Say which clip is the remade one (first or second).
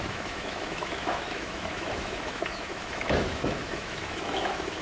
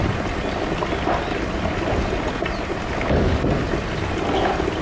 first